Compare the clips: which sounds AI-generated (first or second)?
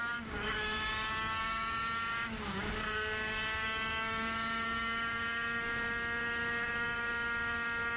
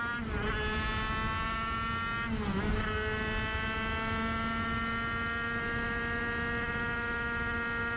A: first